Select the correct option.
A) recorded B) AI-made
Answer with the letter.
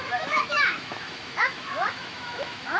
B